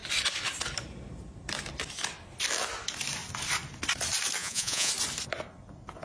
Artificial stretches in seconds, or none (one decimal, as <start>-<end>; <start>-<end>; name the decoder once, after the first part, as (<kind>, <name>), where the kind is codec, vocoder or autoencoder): 4.4-4.9 (vocoder, Vocos)